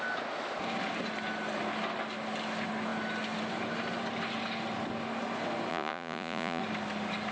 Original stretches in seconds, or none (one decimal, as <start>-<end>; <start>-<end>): 0.0-5.7; 6.6-7.3